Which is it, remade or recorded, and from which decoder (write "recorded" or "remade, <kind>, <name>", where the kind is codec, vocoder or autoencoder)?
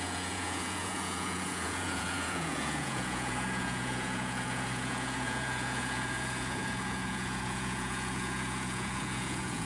remade, vocoder, Vocos